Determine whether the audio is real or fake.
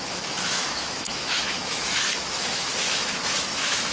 fake